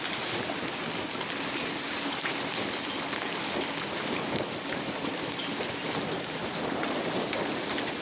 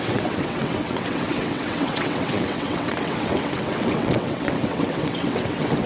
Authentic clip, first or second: first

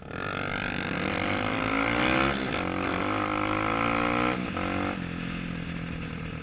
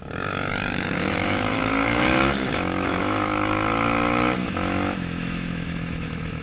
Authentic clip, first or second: first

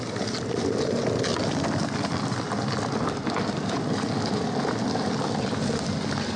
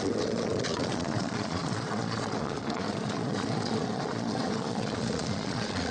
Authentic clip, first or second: first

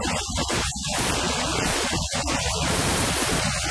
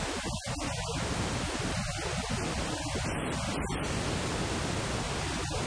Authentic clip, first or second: second